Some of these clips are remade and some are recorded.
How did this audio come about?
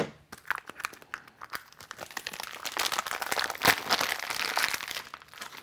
recorded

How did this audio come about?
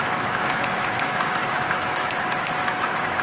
remade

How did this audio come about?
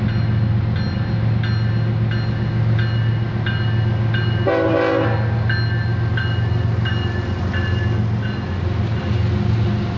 recorded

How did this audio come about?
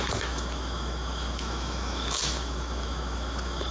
remade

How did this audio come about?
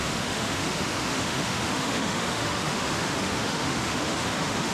remade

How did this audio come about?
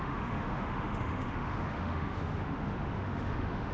remade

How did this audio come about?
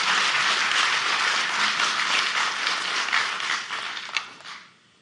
recorded